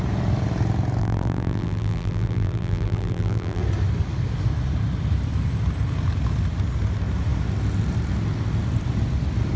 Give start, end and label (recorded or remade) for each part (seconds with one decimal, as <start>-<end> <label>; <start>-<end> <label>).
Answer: 0.0-1.0 recorded; 1.0-3.6 remade; 3.6-9.6 recorded